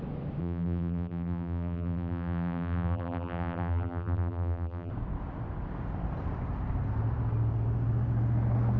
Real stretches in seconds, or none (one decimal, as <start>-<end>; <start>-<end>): 0.0-0.4; 4.9-8.8